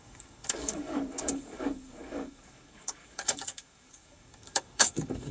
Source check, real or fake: fake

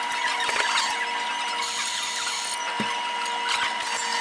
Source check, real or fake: real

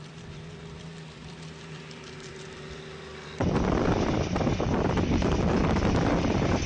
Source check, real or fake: fake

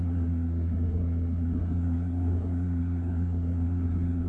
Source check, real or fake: fake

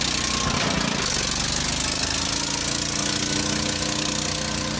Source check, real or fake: real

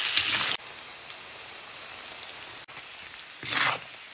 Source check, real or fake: real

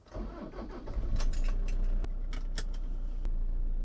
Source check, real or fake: real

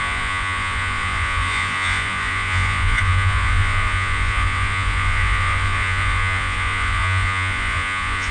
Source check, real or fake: fake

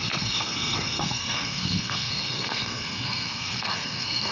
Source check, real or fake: fake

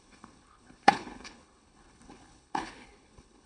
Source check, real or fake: fake